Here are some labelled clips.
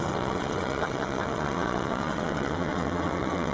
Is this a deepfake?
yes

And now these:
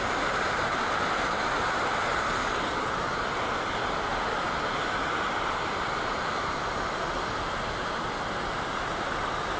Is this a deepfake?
no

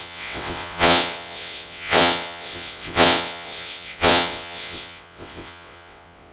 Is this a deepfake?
yes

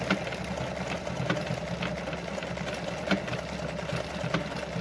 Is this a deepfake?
no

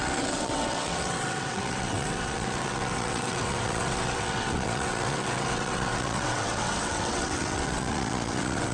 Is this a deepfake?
yes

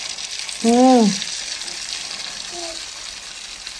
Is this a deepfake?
no